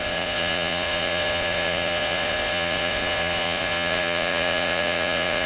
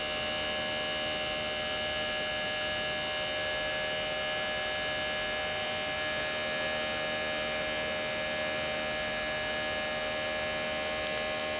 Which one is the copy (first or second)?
first